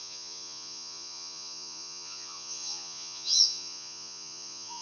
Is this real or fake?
fake